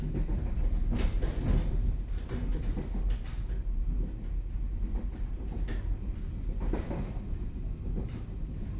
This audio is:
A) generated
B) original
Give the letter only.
B